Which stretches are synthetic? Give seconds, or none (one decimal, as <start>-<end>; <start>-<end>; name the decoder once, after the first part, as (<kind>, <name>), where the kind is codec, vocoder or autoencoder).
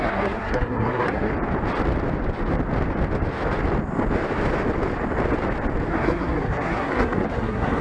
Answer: 0.0-1.3 (codec, SNAC); 5.9-7.8